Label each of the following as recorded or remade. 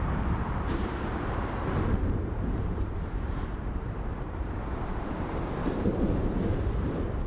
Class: remade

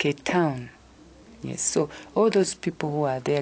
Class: recorded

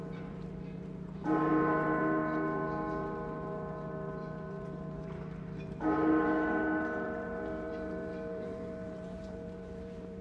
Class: remade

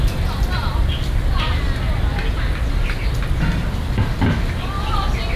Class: recorded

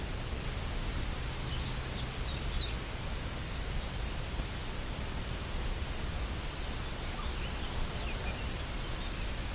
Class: recorded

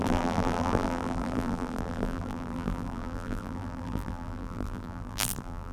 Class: remade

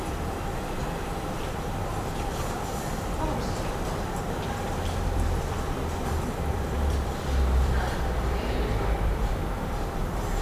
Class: remade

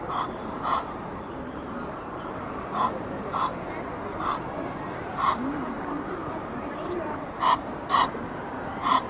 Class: remade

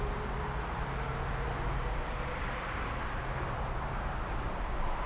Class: recorded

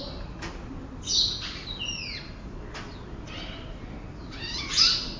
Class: remade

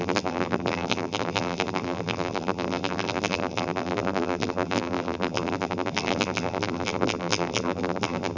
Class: remade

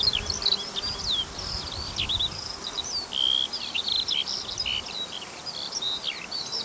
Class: remade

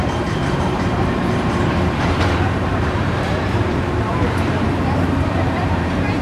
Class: remade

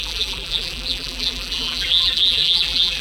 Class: remade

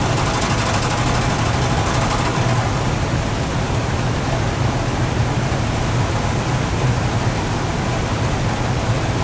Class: recorded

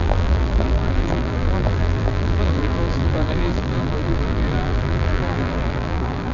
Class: remade